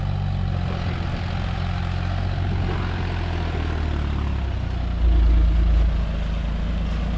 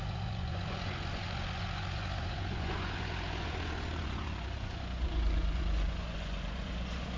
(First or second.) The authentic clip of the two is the first